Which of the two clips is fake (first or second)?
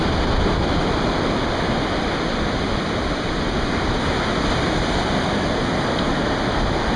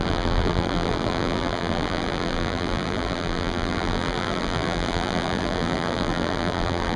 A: second